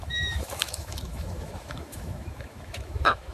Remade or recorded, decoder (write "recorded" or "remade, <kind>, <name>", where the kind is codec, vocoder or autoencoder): remade, autoencoder, DAC-VAE